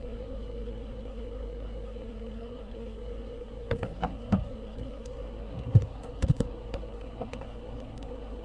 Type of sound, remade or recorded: remade